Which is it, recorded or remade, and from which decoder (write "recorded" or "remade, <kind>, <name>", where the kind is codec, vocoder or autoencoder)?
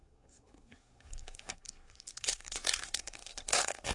remade, codec, SNAC